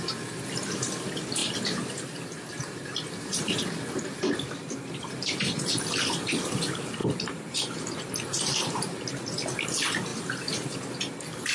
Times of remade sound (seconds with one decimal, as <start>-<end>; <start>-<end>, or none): 1.4-3.4; 7.0-9.1; 10.1-10.8